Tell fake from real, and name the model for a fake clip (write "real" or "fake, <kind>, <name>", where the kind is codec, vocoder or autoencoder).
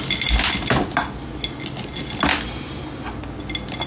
real